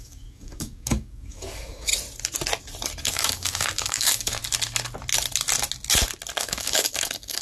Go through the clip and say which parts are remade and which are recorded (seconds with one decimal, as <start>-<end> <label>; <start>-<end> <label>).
0.0-1.9 remade; 1.9-3.1 recorded; 3.1-4.4 remade; 4.4-6.4 recorded; 6.4-7.4 remade